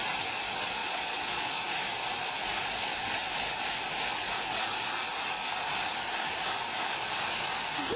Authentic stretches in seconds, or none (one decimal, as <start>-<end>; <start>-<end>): 0.0-0.8; 1.5-8.0